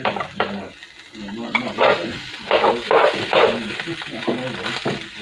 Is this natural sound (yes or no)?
yes